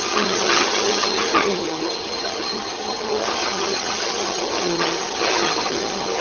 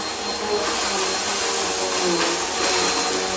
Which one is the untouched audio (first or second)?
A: second